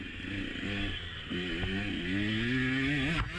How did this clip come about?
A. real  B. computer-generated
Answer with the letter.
A